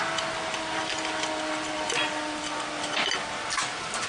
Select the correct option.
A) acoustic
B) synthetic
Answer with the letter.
A